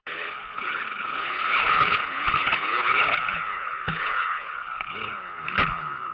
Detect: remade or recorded remade